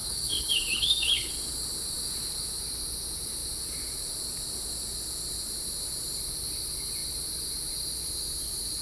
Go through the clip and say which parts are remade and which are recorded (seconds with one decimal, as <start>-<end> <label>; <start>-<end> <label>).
0.0-1.3 remade; 1.3-8.8 recorded